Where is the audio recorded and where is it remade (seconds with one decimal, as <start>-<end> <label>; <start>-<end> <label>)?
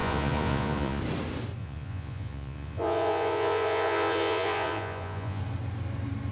0.0-1.0 remade; 1.0-1.6 recorded; 1.6-5.4 remade; 5.4-6.3 recorded